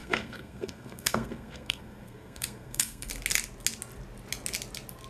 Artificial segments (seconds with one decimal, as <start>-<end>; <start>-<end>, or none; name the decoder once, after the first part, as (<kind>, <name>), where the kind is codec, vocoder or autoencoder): 0.0-3.1 (codec, SNAC)